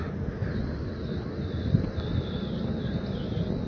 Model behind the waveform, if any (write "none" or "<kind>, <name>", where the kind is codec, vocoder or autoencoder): none